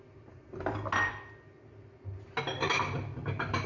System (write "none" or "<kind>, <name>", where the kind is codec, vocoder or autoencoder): none